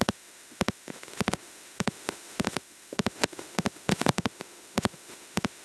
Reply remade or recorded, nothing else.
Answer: remade